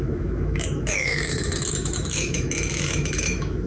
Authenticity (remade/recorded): remade